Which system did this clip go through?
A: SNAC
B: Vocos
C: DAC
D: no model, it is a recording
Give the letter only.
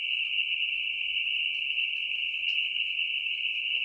D